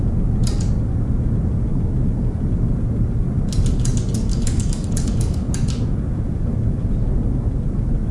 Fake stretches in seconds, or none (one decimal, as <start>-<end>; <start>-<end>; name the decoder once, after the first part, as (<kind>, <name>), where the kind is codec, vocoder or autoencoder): 4.3-5.5 (codec, DAC)